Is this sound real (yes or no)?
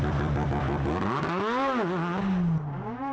yes